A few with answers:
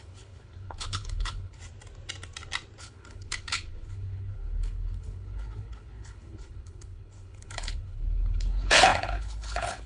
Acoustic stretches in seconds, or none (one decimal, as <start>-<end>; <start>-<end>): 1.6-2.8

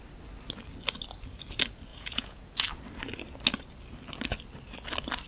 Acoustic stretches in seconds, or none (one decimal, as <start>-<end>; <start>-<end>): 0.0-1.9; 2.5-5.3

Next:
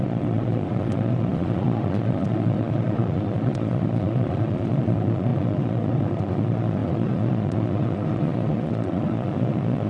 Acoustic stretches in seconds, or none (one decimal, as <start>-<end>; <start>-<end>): none

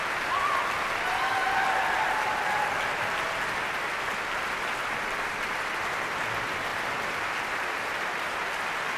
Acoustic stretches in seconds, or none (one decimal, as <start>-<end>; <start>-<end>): 0.0-9.0